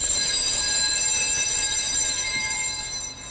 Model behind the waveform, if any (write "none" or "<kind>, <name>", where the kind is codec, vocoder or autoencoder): vocoder, BigVGAN v2